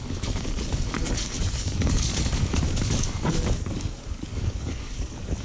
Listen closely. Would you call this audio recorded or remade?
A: remade